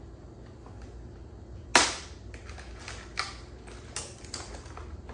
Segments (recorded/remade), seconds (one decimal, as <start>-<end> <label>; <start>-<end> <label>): 0.0-5.1 recorded